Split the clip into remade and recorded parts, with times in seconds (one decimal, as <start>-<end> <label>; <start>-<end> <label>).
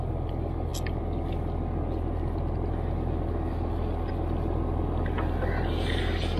0.0-6.4 recorded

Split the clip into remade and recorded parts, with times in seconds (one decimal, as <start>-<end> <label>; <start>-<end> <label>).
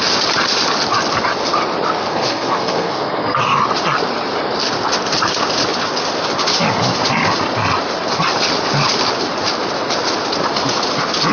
0.0-2.0 recorded; 2.0-3.4 remade; 3.4-11.3 recorded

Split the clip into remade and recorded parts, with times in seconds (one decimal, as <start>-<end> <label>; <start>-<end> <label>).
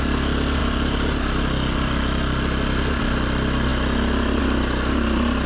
0.0-5.5 recorded